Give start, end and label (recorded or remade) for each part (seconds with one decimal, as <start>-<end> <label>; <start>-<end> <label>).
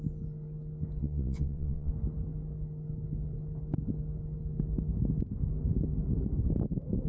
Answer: 0.0-1.0 recorded; 1.0-1.9 remade; 1.9-7.1 recorded